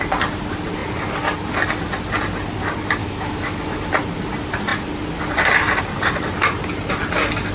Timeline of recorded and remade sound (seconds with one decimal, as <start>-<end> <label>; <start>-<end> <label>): 0.0-3.0 recorded; 3.0-3.8 remade; 3.8-7.5 recorded